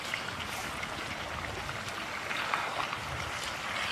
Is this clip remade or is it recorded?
recorded